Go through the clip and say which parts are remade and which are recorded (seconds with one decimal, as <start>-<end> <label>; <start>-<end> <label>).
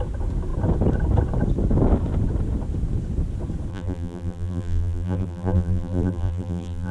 0.0-3.7 recorded; 3.7-6.9 remade